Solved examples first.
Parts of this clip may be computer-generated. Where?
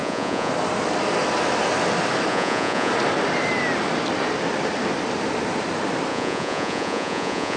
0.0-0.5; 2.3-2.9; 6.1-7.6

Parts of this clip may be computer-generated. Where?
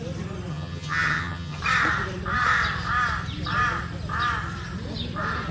0.5-1.6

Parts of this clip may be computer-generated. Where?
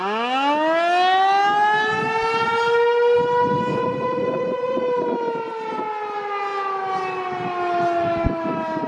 3.7-4.8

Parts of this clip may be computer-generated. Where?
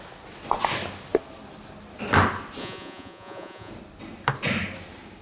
2.6-3.7